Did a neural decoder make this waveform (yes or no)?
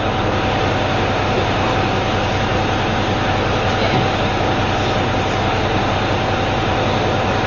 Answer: no